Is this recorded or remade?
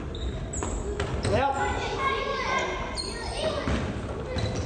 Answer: recorded